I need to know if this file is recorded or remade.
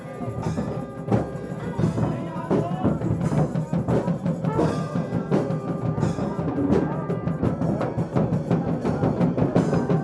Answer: recorded